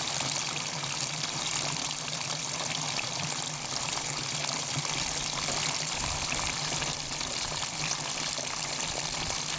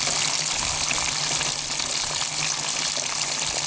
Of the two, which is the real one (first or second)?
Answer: second